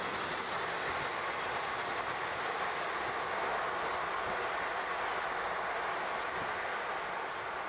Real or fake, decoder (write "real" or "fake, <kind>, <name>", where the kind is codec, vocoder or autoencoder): real